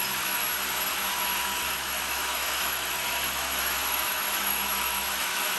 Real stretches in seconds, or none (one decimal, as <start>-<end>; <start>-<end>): 0.4-0.9

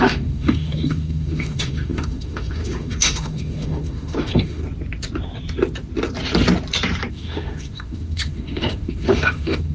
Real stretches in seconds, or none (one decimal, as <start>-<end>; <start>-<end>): 4.6-7.1

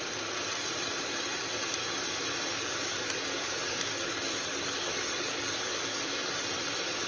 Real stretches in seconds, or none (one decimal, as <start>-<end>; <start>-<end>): 0.0-2.5; 6.4-7.1

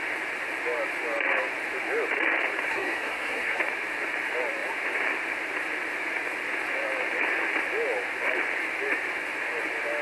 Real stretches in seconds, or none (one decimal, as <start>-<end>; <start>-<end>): 0.0-2.7; 3.6-10.0

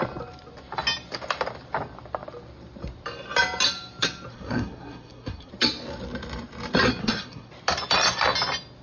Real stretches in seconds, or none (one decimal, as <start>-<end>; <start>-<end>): 0.0-4.3; 5.5-7.0; 7.5-8.8

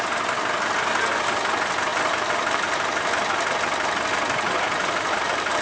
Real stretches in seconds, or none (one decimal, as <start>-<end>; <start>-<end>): 0.0-5.6